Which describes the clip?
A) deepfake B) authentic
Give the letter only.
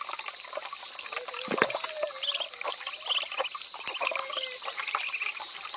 B